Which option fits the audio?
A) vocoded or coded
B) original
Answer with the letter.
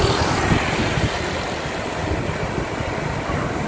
B